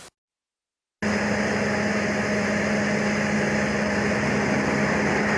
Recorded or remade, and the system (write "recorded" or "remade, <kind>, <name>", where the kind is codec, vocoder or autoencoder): recorded